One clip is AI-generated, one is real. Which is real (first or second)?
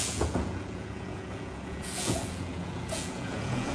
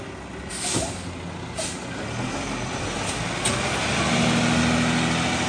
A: second